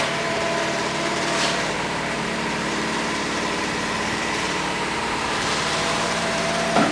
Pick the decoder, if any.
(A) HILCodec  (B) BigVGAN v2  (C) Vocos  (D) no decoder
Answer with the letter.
B